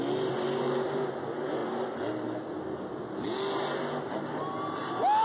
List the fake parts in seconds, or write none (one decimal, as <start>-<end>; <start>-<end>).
none